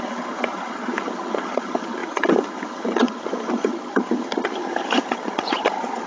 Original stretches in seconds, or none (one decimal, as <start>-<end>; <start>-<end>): none